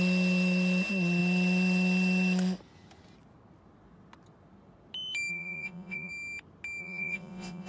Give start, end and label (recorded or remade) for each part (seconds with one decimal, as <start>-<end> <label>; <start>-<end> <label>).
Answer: 0.0-5.3 recorded; 5.3-6.1 remade; 6.1-6.8 recorded; 6.8-7.7 remade